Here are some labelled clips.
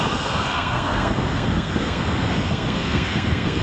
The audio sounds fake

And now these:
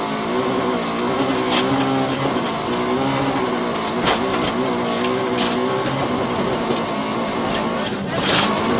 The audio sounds real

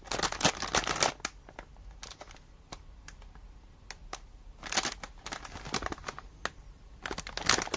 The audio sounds real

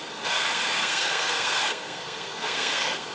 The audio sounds fake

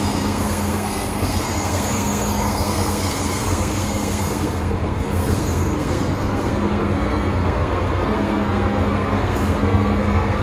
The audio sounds fake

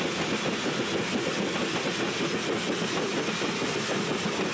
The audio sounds real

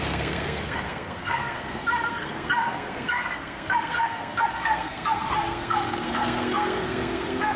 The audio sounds fake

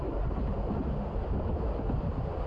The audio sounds real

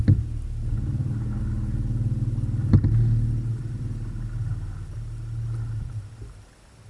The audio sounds real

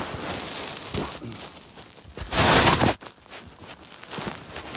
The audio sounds real